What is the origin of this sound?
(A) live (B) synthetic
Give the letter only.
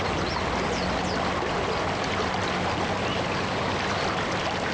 A